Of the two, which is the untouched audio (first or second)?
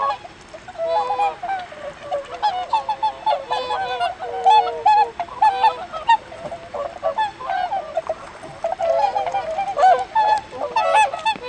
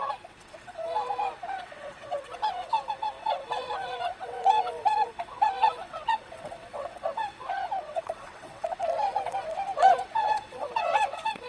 first